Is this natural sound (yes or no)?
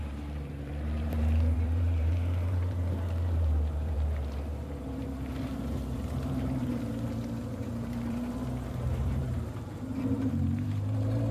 no